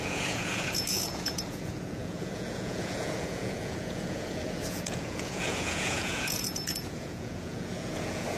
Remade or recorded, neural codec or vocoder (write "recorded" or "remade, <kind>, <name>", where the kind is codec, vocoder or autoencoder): remade, vocoder, Vocos